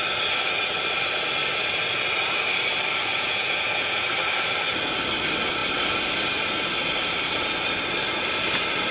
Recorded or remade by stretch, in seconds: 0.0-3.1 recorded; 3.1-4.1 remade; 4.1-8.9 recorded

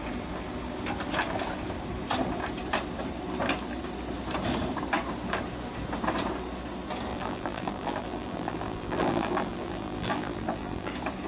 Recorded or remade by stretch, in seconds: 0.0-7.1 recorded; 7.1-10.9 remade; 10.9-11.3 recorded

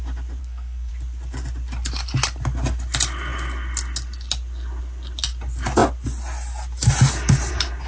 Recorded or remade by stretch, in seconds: 0.0-0.4 recorded; 0.4-0.9 remade; 0.9-7.9 recorded

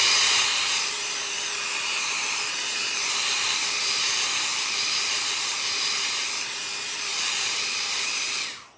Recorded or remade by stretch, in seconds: 0.0-8.8 remade

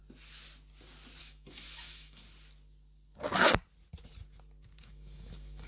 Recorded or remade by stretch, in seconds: 0.0-1.2 recorded; 1.2-2.2 remade; 2.2-4.8 recorded; 4.8-5.7 remade

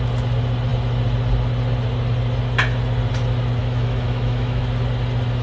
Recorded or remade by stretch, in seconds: 0.0-3.6 recorded; 3.6-4.6 remade; 4.6-5.4 recorded